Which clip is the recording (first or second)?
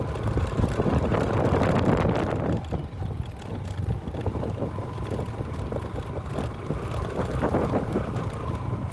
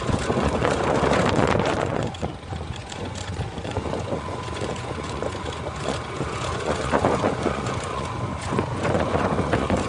first